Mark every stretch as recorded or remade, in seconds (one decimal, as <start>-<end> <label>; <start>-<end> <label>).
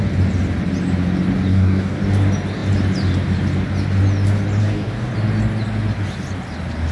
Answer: 0.0-1.5 recorded; 1.5-2.0 remade; 2.0-4.6 recorded; 4.6-5.1 remade; 5.1-6.9 recorded